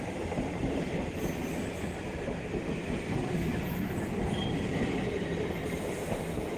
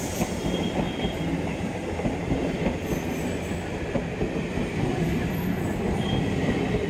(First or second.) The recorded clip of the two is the second